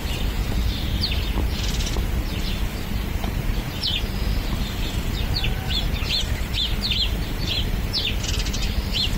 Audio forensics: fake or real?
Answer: fake